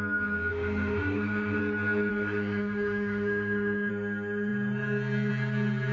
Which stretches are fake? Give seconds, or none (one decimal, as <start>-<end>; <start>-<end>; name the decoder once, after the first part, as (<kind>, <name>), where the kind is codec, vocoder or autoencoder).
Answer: 0.5-1.6 (autoencoder, DAC-VAE); 2.1-3.9